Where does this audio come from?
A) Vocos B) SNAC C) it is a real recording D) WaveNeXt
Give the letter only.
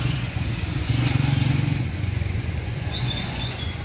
A